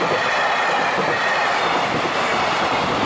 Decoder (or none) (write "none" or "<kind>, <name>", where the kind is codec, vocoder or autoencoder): none